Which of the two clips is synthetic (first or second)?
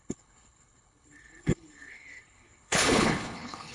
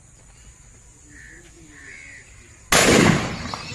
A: first